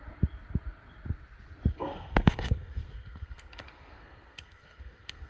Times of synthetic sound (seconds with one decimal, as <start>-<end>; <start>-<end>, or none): 1.7-5.3